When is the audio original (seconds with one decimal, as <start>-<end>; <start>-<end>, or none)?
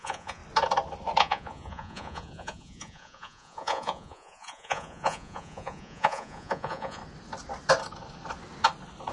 0.4-1.2; 7.0-9.1